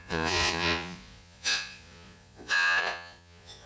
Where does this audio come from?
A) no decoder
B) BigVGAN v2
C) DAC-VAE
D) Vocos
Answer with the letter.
D